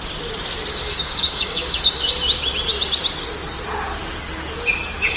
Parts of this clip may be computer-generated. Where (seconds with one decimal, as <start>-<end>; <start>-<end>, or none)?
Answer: 0.7-2.1